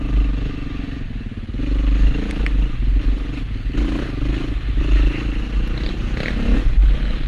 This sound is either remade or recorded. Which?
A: recorded